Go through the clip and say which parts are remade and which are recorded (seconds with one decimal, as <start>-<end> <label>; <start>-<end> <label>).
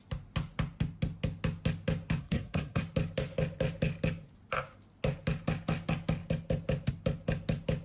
0.0-2.2 recorded; 2.2-2.8 remade; 2.8-7.8 recorded